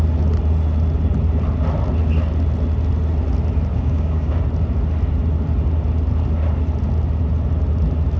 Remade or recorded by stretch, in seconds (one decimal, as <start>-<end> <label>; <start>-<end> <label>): 0.0-3.7 recorded; 3.7-4.4 remade; 4.4-8.2 recorded